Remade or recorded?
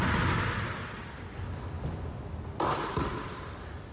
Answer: recorded